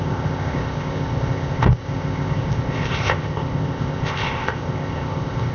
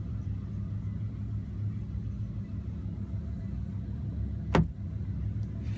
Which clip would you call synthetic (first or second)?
first